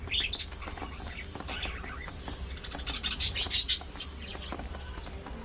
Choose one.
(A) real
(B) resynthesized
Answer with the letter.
A